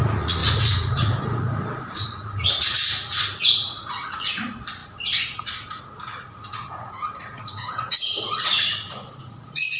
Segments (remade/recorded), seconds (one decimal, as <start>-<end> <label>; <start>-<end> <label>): 0.0-9.8 remade